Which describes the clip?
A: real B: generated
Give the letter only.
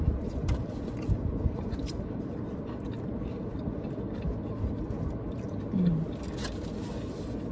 A